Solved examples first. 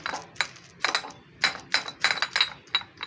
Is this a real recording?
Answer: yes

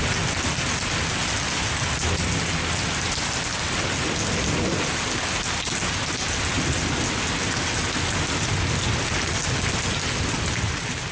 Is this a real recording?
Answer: yes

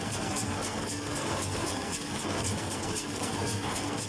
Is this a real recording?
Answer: no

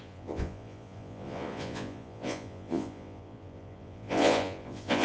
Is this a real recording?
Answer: no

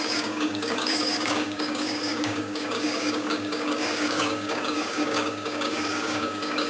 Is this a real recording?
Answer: no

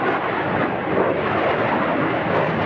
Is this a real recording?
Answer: yes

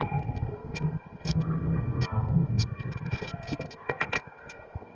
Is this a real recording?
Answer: no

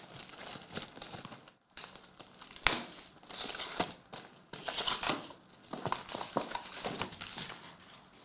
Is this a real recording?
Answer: yes